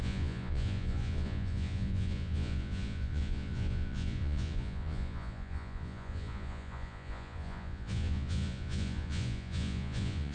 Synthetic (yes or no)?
yes